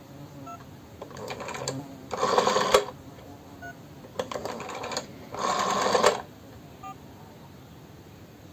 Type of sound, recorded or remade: recorded